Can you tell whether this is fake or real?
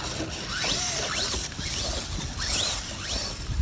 real